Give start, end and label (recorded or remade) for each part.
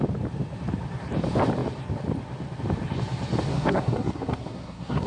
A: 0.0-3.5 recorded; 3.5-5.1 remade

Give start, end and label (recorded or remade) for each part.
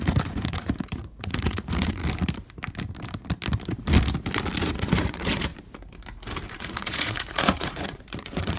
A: 0.0-2.0 remade; 2.0-4.6 recorded; 4.6-5.5 remade; 5.5-6.5 recorded; 6.5-8.6 remade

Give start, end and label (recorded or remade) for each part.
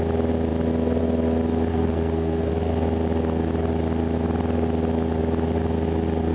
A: 0.0-1.7 recorded; 1.7-2.5 remade; 2.5-6.3 recorded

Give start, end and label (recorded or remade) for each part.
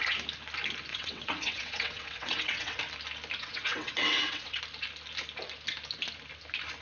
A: 0.0-0.9 recorded; 0.9-2.8 remade; 2.8-3.4 recorded; 3.4-4.6 remade; 4.6-6.8 recorded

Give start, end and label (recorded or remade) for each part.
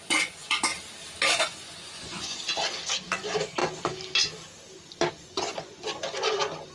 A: 0.0-0.7 remade; 0.7-1.4 recorded; 1.4-2.4 remade; 2.4-3.2 recorded; 3.2-3.6 remade; 3.6-5.1 recorded; 5.1-6.7 remade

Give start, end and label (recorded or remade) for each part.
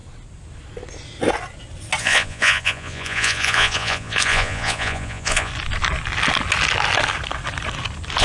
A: 0.0-2.0 recorded; 2.0-5.5 remade; 5.5-8.2 recorded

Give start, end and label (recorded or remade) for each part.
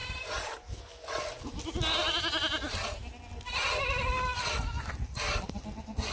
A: 0.0-0.8 remade; 0.8-6.1 recorded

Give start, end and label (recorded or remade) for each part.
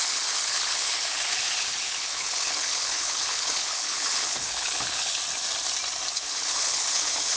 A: 0.0-5.2 remade; 5.2-6.1 recorded; 6.1-7.4 remade